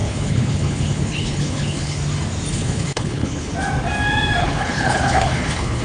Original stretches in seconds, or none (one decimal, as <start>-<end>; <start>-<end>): 2.0-2.5; 3.5-4.4